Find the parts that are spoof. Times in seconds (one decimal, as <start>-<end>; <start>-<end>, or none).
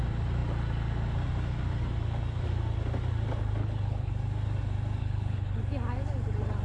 3.6-4.1; 5.0-5.6